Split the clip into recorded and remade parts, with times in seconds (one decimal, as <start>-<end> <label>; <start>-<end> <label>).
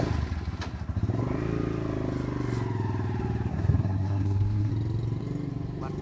0.0-3.5 recorded; 3.5-4.7 remade; 4.7-6.0 recorded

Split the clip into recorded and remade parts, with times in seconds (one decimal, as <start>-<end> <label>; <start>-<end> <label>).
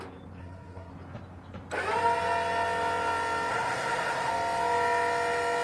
0.0-0.4 recorded; 0.4-0.9 remade; 0.9-3.5 recorded; 3.5-4.3 remade; 4.3-5.6 recorded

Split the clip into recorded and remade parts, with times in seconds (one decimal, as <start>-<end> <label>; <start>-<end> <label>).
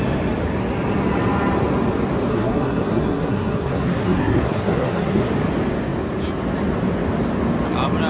0.0-2.3 recorded; 2.3-5.3 remade; 5.3-8.1 recorded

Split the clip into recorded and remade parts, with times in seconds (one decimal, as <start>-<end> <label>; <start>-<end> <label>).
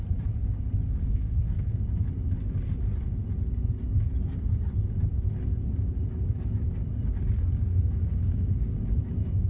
0.0-1.0 recorded; 1.0-1.8 remade; 1.8-9.5 recorded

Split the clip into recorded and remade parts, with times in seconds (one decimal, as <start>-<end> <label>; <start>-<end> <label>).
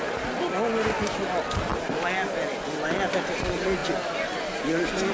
0.0-5.1 recorded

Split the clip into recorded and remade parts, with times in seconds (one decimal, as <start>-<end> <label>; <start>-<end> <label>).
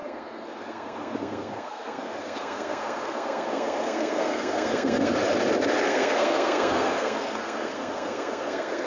0.0-5.1 remade; 5.1-5.8 recorded; 5.8-8.9 remade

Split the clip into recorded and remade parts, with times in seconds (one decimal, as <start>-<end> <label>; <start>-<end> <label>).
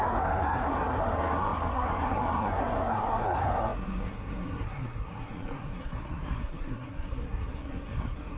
0.0-8.4 remade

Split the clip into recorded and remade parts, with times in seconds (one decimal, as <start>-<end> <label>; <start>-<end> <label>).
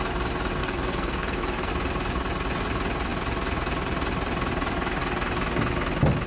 0.0-0.6 recorded; 0.6-1.7 remade; 1.7-6.3 recorded